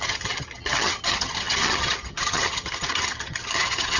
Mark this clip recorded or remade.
remade